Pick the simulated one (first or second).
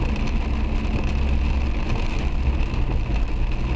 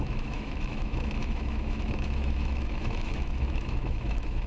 second